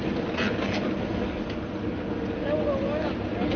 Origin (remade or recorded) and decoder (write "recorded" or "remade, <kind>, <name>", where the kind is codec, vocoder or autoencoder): recorded